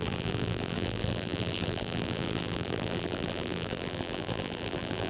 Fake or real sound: fake